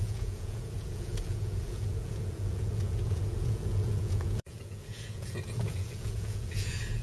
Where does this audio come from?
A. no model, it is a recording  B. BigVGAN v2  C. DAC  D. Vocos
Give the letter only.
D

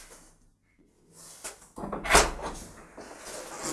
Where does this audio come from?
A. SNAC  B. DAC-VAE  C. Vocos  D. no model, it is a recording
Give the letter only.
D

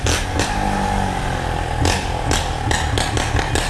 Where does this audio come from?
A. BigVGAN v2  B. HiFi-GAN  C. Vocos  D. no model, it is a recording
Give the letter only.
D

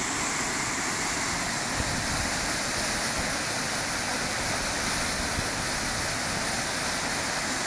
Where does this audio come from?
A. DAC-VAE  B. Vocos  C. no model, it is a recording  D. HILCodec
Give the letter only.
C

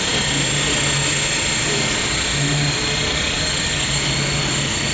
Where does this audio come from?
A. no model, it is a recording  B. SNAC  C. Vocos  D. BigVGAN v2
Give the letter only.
A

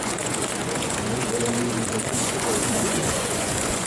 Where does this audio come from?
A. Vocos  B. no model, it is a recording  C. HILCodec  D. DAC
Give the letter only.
A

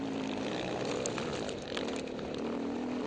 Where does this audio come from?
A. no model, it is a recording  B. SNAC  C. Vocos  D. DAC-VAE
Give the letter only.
A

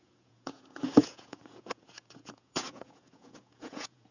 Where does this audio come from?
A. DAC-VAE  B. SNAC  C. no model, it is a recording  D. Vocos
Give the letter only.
D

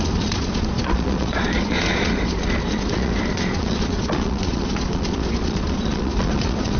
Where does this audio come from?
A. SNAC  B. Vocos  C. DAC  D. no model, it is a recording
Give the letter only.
B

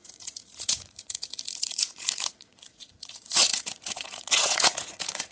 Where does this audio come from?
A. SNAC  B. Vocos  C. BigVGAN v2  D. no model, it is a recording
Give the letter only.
B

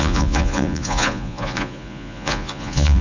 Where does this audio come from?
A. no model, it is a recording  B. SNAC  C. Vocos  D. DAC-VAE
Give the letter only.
C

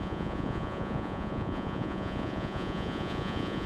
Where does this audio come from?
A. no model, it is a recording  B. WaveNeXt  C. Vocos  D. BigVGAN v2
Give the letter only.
C